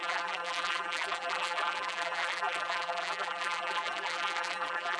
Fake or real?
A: fake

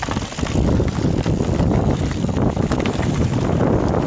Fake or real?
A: fake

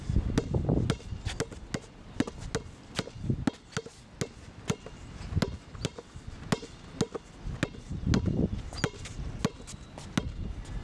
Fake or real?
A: real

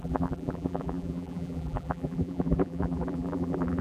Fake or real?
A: fake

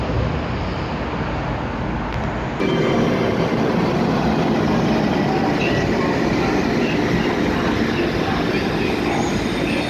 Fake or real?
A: real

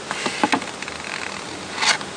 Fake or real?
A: real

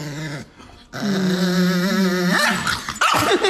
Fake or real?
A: real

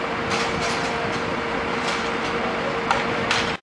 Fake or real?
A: real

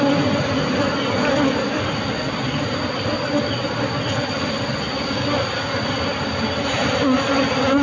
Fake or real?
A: real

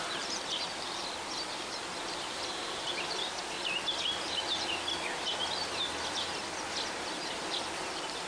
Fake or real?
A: fake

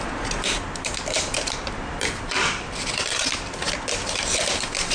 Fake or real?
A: fake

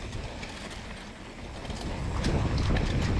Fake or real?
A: real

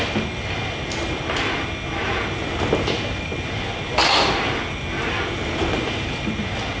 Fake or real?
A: real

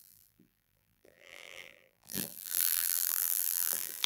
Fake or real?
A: fake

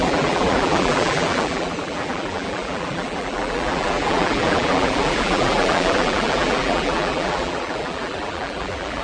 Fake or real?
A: fake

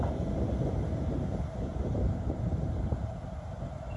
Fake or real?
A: fake